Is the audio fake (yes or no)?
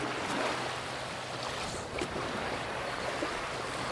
no